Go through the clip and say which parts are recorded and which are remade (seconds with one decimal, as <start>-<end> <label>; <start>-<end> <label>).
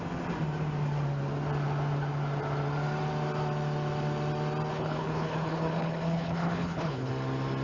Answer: 0.0-4.7 recorded; 4.7-7.1 remade; 7.1-7.6 recorded